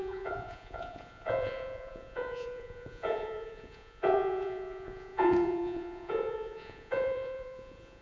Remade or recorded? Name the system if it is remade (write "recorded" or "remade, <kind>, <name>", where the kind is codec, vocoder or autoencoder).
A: remade, vocoder, Vocos